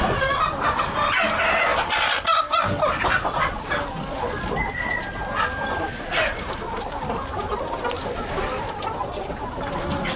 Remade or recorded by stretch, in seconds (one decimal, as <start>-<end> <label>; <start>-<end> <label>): 0.0-10.2 recorded